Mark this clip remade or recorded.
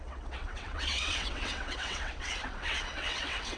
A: remade